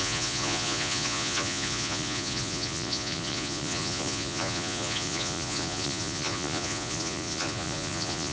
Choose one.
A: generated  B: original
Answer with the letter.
A